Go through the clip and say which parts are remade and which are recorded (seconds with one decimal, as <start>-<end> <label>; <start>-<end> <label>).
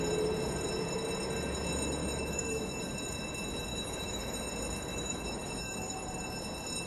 0.0-2.0 recorded; 2.0-2.8 remade; 2.8-3.7 recorded; 3.7-4.5 remade; 4.5-4.9 recorded; 4.9-6.0 remade; 6.0-6.9 recorded